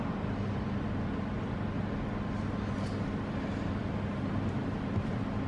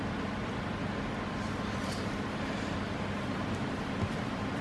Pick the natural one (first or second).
first